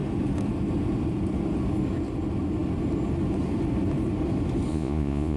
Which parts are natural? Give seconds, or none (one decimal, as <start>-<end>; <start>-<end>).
0.0-4.7